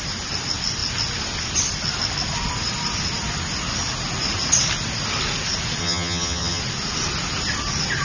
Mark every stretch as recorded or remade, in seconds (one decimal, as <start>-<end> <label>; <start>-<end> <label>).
0.0-5.8 recorded; 5.8-6.6 remade; 6.6-8.0 recorded